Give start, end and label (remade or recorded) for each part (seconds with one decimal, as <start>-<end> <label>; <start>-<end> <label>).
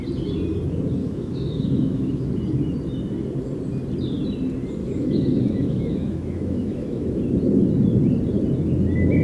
0.0-1.0 recorded; 1.0-2.3 remade; 2.3-4.8 recorded; 4.8-7.2 remade; 7.2-9.2 recorded